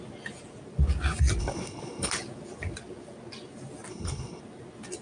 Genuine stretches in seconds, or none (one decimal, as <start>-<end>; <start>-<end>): 0.0-1.4; 2.1-3.9; 4.4-5.0

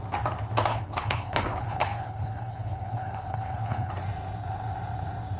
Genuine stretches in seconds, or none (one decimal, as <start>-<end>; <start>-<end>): 0.0-0.7; 3.9-5.4